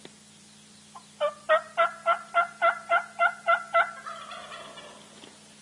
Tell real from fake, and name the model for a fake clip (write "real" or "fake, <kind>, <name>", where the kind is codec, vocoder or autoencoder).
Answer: real